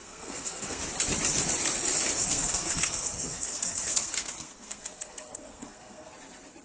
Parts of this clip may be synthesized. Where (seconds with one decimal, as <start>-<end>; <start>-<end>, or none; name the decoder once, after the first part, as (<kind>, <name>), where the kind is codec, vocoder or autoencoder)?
0.0-0.8 (codec, SNAC); 2.2-6.1